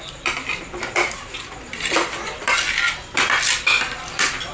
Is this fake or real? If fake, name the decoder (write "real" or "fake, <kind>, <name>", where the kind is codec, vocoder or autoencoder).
fake, vocoder, BigVGAN v2